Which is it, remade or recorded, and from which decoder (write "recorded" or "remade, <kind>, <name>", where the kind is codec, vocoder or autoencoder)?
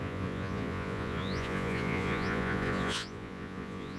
remade, vocoder, Vocos